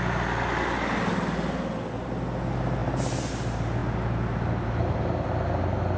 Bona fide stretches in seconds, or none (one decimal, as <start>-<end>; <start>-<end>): 0.0-6.0